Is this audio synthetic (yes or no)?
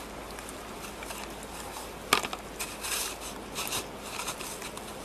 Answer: no